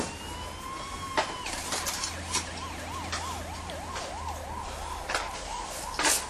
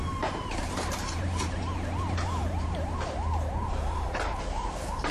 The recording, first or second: first